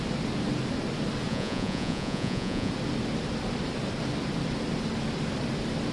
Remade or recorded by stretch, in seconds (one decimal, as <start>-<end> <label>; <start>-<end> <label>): 0.0-1.3 recorded; 1.3-2.7 remade; 2.7-5.9 recorded

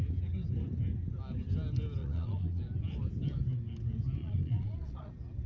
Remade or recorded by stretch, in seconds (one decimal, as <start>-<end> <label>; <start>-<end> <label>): 0.0-2.0 recorded; 2.0-2.6 remade; 2.6-4.2 recorded; 4.2-5.1 remade; 5.1-5.5 recorded

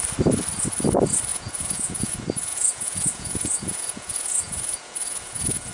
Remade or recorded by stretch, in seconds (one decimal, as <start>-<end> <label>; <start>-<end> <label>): 0.0-1.3 recorded; 1.3-2.1 remade; 2.1-2.5 recorded; 2.5-5.7 remade

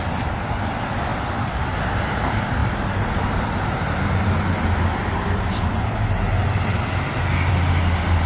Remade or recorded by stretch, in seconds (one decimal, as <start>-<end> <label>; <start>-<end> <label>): 0.0-8.3 recorded

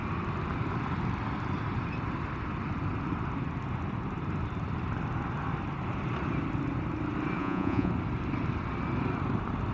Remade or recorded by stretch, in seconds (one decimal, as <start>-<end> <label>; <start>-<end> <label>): 0.0-7.4 recorded; 7.4-7.9 remade; 7.9-9.7 recorded

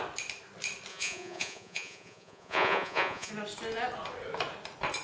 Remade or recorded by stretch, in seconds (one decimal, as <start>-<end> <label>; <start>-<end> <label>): 0.0-0.9 recorded; 0.9-3.3 remade; 3.3-5.0 recorded

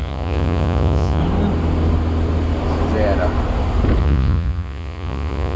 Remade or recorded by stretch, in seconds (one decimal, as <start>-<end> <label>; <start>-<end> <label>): 0.0-1.2 remade; 1.2-4.0 recorded; 4.0-5.6 remade

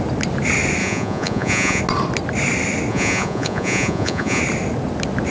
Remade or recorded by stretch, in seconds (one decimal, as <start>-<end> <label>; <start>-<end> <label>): 0.0-0.8 recorded; 0.8-1.8 remade; 1.8-2.9 recorded; 2.9-4.4 remade; 4.4-5.3 recorded